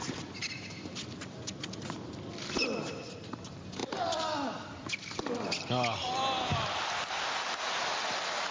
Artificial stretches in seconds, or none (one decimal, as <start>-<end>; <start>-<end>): 3.8-4.9